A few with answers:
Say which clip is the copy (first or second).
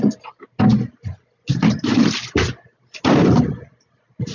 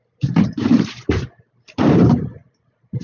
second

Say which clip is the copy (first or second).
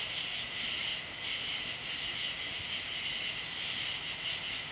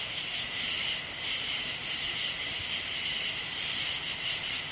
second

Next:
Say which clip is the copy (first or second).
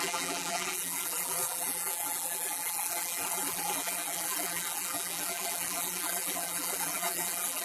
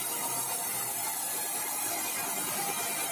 first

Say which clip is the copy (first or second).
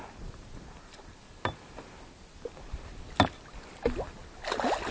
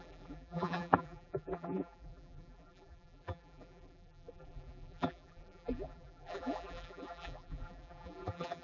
second